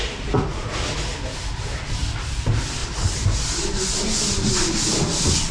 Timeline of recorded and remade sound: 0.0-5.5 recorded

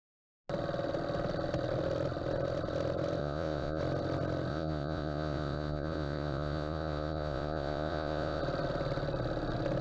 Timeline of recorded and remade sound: 0.0-3.2 recorded; 3.2-3.8 remade; 3.8-4.5 recorded; 4.5-8.4 remade; 8.4-9.8 recorded

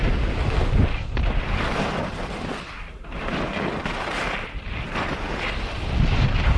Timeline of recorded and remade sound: 0.0-6.6 recorded

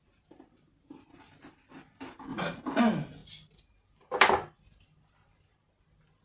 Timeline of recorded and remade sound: 0.0-2.3 recorded; 2.3-2.8 remade; 2.8-6.2 recorded